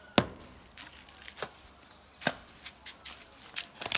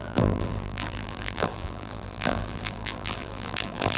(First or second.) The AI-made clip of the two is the second